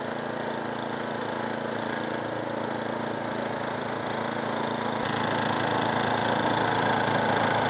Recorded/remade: recorded